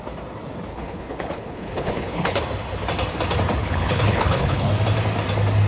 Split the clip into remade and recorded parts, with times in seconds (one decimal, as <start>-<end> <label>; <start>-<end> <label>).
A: 0.0-0.7 recorded; 0.7-2.4 remade; 2.4-3.6 recorded; 3.6-4.7 remade; 4.7-5.7 recorded